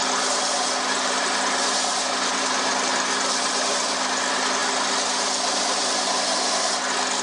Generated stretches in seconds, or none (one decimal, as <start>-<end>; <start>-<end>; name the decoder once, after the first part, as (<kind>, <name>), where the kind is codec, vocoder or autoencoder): none